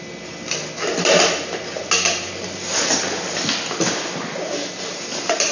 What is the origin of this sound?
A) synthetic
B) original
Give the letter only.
B